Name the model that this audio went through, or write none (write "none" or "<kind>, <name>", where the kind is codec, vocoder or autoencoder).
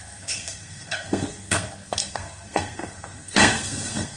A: codec, SNAC